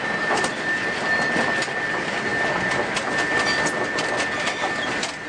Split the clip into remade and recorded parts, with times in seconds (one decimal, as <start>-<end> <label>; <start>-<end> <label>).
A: 0.0-5.3 recorded